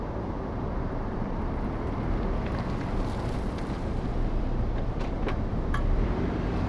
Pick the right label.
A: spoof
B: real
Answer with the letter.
A